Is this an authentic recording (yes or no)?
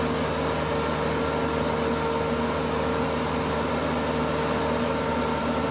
yes